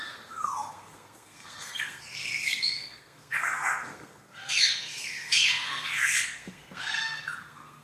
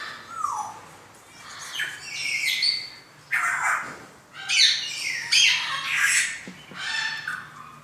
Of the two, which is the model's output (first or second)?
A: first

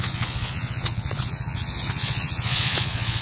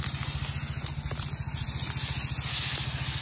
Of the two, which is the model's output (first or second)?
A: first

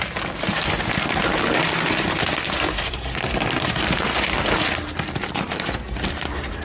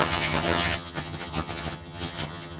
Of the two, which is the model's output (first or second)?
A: second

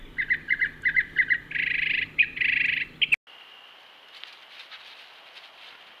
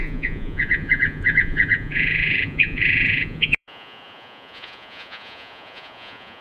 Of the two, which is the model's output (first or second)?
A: second